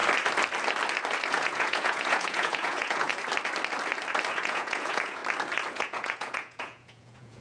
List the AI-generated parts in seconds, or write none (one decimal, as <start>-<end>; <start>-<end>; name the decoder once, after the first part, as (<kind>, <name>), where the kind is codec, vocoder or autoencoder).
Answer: 1.3-3.1 (vocoder, Vocos); 4.3-5.2; 5.7-7.4